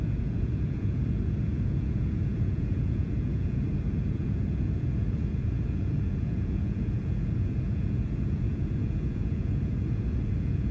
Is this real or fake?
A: fake